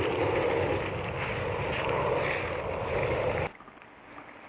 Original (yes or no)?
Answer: yes